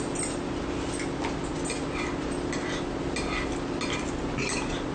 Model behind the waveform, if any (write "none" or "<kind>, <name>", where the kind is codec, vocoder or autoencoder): none